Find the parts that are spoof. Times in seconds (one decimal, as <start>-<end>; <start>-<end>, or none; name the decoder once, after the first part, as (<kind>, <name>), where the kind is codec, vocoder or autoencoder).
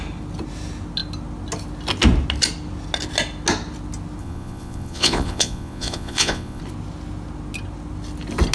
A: 4.2-6.6 (vocoder, Vocos)